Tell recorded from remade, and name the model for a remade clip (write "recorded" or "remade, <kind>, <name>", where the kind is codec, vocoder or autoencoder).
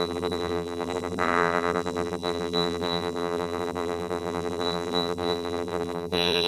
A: remade, vocoder, BigVGAN v2